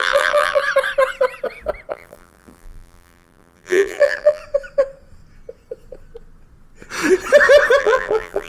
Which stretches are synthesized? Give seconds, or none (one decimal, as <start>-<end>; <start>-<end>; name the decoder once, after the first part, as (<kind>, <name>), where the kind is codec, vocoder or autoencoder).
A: 0.0-0.6 (vocoder, BigVGAN v2); 1.9-4.4; 7.8-8.5